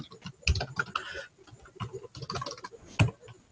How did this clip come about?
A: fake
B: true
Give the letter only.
B